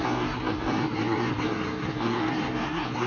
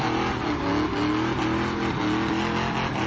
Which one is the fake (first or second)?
first